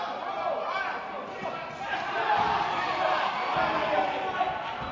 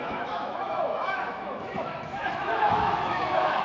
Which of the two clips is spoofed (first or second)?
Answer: second